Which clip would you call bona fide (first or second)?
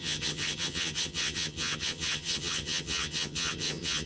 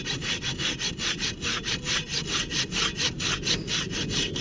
second